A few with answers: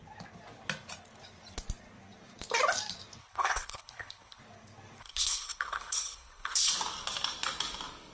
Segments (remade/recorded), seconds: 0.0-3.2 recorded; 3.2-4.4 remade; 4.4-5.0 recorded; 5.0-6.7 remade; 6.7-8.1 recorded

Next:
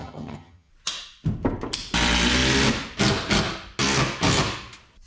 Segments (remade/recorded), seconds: 0.0-0.7 remade; 0.7-5.1 recorded